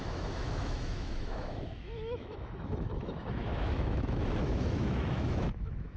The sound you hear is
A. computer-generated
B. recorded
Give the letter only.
A